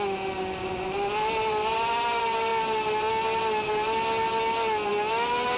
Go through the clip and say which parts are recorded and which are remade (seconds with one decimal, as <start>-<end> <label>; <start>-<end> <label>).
0.0-5.6 recorded